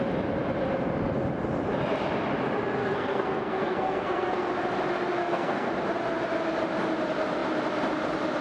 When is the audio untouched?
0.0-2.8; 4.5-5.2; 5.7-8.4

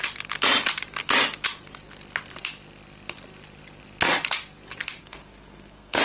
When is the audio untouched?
0.0-5.0